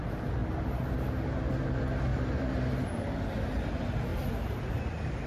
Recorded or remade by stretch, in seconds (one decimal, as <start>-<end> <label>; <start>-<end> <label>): 0.0-2.1 recorded; 2.1-3.1 remade; 3.1-5.3 recorded